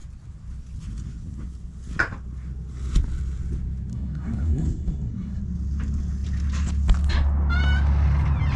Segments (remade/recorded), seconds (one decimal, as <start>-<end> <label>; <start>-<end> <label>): 0.0-3.9 recorded; 3.9-5.4 remade; 5.4-8.6 recorded